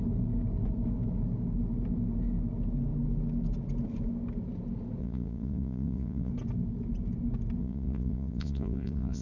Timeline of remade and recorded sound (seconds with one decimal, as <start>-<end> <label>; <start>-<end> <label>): 0.0-5.0 recorded; 5.0-6.3 remade; 6.3-7.6 recorded; 7.6-9.2 remade